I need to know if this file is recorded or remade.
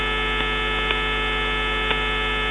recorded